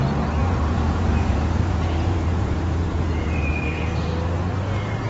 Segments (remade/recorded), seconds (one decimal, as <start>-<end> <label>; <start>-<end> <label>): 0.0-0.4 recorded; 0.4-3.5 remade; 3.5-5.1 recorded